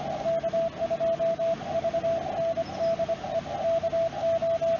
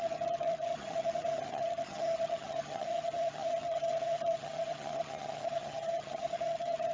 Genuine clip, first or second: first